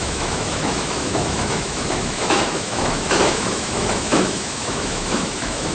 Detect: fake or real fake